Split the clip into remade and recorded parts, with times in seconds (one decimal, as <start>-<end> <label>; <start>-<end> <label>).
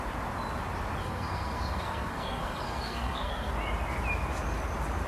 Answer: 0.0-1.0 recorded; 1.0-3.5 remade; 3.5-5.1 recorded